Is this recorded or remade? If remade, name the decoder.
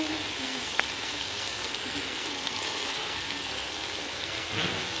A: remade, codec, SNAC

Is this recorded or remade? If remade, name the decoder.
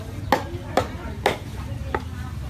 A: recorded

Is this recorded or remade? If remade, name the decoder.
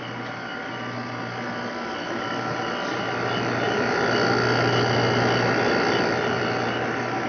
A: recorded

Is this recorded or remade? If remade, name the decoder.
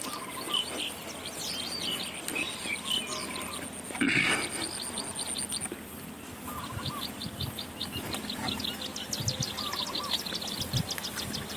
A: recorded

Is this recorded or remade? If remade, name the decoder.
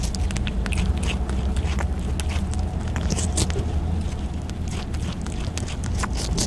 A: recorded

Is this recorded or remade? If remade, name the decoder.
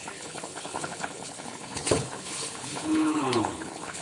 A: remade, codec, HILCodec